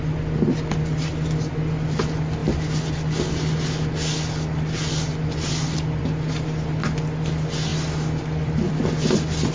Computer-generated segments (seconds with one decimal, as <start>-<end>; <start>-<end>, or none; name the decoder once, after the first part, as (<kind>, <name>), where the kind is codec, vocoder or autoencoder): none